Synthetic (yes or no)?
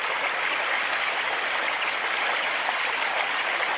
no